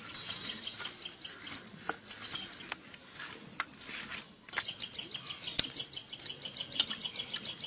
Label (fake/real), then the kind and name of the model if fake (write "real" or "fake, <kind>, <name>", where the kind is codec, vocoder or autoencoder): real